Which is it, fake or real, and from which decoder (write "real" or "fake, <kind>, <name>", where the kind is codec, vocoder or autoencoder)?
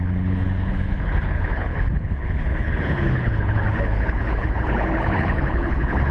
fake, codec, HILCodec